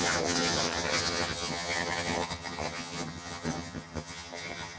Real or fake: fake